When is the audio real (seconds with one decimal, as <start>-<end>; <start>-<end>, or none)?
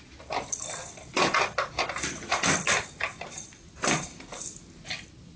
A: 0.0-5.4